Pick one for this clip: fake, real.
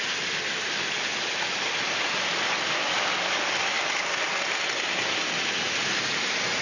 real